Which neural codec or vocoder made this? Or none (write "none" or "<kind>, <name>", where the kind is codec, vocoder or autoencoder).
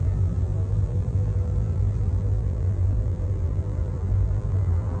vocoder, BigVGAN v2